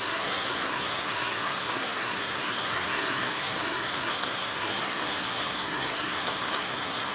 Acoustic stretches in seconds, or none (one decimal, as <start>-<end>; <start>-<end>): none